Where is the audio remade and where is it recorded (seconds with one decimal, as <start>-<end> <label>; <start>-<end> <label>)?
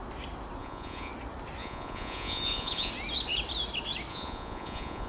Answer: 0.0-0.6 recorded; 0.6-1.1 remade; 1.1-1.6 recorded; 1.6-2.9 remade; 2.9-4.1 recorded; 4.1-5.1 remade